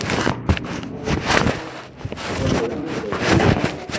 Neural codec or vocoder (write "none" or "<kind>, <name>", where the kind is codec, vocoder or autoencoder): none